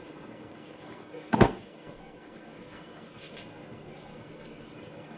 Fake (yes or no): yes